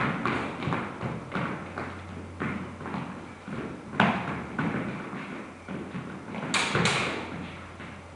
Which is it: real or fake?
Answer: real